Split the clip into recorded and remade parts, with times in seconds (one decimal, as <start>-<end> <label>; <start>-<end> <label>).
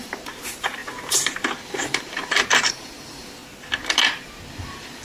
0.0-3.4 remade; 3.4-4.1 recorded; 4.1-5.0 remade